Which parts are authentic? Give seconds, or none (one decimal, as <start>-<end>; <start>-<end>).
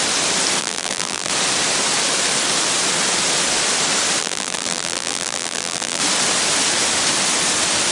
0.0-0.6; 1.3-4.2; 6.0-7.9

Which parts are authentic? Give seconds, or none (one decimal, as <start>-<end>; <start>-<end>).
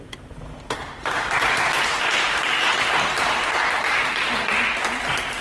0.0-0.8; 4.0-5.4